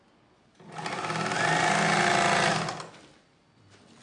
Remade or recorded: recorded